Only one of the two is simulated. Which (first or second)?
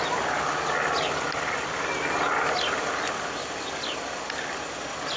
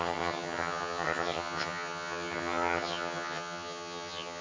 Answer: second